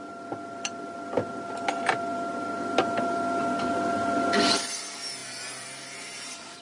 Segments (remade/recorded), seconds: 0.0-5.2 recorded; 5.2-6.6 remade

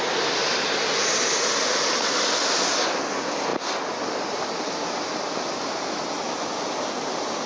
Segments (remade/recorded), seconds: 0.0-7.5 recorded

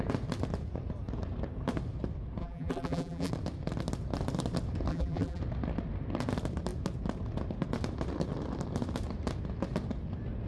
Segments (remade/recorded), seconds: 0.0-2.4 recorded; 2.4-3.3 remade; 3.3-4.9 recorded; 4.9-5.4 remade; 5.4-10.5 recorded

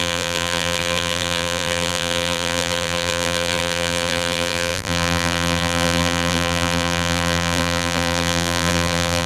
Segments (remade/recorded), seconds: 0.0-9.3 remade

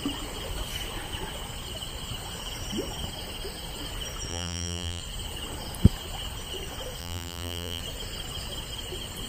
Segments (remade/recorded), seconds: 0.0-4.3 recorded; 4.3-5.0 remade; 5.0-7.0 recorded; 7.0-7.8 remade; 7.8-9.3 recorded